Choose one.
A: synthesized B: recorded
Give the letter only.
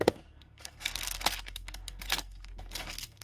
A